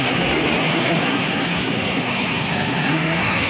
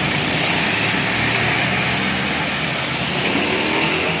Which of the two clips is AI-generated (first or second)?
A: first